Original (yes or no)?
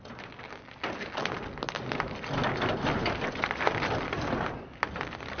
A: yes